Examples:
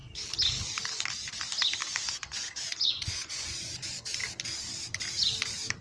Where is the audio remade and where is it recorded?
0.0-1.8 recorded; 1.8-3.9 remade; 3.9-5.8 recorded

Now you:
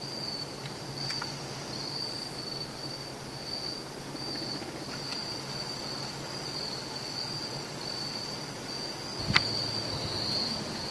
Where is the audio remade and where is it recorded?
0.0-10.9 recorded

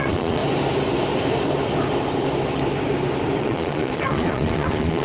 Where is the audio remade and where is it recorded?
0.0-0.4 remade; 0.4-3.4 recorded; 3.4-5.0 remade

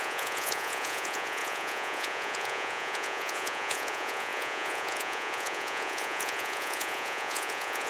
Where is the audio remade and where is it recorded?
0.0-7.9 remade

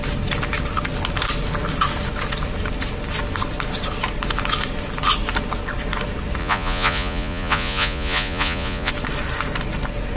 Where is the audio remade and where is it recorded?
0.0-6.4 recorded; 6.4-8.9 remade; 8.9-10.2 recorded

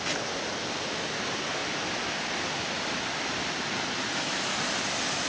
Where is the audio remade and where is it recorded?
0.0-5.3 recorded

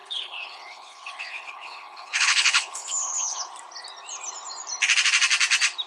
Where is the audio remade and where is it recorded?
0.0-3.5 remade; 3.5-5.9 recorded